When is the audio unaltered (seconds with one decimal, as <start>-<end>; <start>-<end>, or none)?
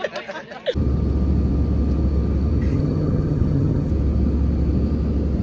0.0-2.7; 3.9-5.4